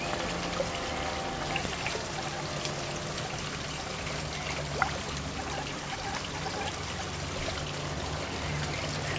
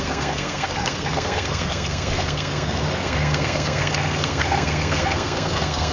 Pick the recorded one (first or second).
first